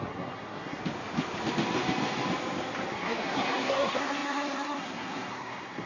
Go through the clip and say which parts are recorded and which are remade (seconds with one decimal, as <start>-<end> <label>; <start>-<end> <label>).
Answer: 0.0-0.8 remade; 0.8-2.9 recorded; 2.9-5.9 remade